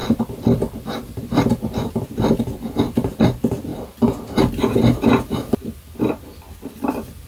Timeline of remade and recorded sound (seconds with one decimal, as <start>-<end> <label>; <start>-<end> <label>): 0.0-3.7 remade; 3.7-6.5 recorded; 6.5-7.3 remade